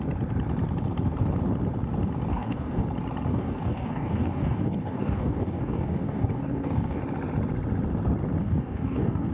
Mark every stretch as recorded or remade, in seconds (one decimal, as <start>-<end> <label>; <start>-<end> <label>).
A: 0.0-2.3 recorded; 2.3-2.8 remade; 2.8-3.3 recorded; 3.3-7.0 remade; 7.0-8.4 recorded; 8.4-9.3 remade